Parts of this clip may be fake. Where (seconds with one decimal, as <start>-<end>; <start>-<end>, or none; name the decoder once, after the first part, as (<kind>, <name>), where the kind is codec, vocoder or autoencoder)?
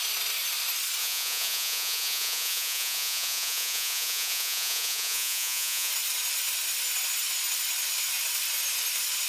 1.0-5.9 (vocoder, Vocos)